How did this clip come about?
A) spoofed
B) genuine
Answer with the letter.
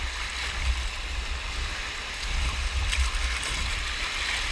B